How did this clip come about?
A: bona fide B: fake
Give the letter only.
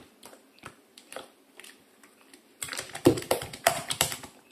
B